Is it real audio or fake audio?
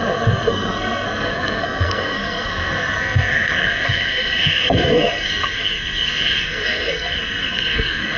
fake